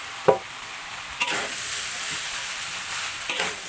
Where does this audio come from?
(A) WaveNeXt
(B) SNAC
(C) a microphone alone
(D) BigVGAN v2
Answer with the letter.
D